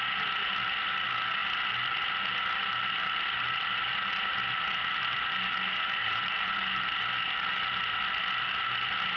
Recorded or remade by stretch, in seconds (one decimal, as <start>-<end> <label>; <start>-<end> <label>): 0.0-6.0 recorded; 6.0-6.6 remade; 6.6-9.2 recorded